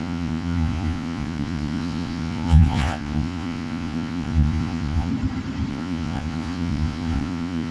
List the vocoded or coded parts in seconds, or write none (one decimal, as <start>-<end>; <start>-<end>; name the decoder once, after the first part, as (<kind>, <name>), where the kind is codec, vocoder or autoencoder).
0.0-5.1 (vocoder, Vocos); 5.7-7.7